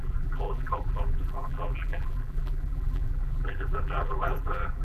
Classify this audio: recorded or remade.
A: remade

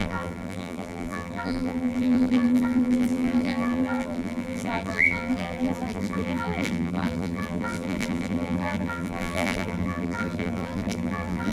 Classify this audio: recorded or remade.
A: remade